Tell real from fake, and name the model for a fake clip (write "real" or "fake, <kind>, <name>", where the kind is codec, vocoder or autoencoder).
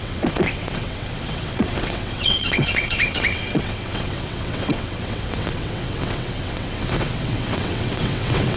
fake, vocoder, WaveNeXt